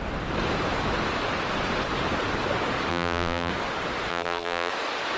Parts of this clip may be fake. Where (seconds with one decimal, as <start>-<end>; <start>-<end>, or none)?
2.9-3.5; 4.1-4.7